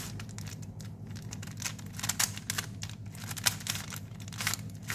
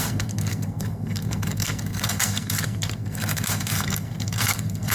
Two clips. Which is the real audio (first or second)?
first